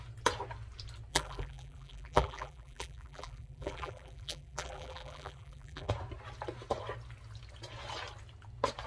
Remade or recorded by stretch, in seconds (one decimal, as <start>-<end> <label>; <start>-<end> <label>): 0.0-1.1 recorded; 1.1-5.9 remade; 5.9-8.9 recorded